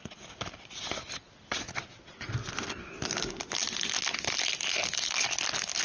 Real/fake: real